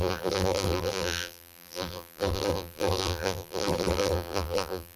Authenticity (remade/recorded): remade